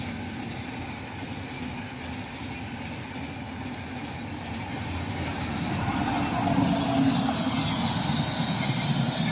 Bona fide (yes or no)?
yes